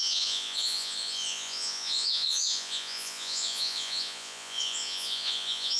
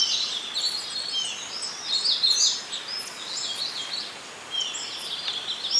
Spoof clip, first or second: first